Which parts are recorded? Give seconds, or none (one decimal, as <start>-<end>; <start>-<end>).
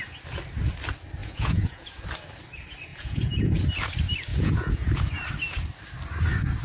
0.0-1.2; 2.0-2.9; 3.6-4.3; 5.1-6.6